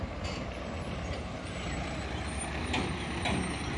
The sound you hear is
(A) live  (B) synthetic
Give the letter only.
A